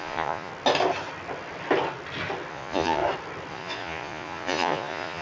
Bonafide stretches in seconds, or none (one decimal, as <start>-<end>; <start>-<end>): 0.5-2.5; 3.0-3.5

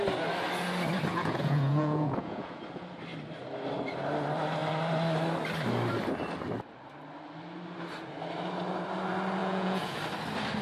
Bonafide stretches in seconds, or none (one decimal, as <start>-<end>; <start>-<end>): 0.0-1.1; 2.6-9.4; 10.0-10.6

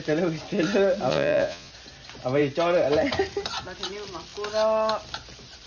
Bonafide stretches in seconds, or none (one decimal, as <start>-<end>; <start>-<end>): 0.0-1.1; 1.7-5.7

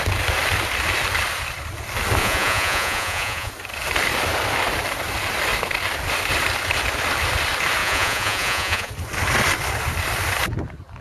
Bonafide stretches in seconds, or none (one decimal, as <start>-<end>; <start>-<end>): 0.0-2.2; 3.5-7.8; 8.9-11.0

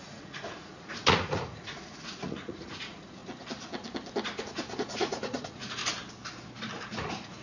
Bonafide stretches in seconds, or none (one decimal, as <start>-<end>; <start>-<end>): 3.2-4.4; 5.8-6.9